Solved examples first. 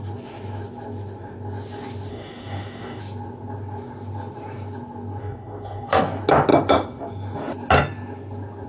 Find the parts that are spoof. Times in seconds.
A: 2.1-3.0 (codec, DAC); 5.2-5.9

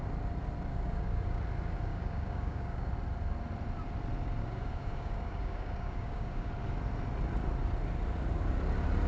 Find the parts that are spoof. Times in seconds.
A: 0.7-1.4 (codec, DAC); 1.9-2.9; 4.4-6.5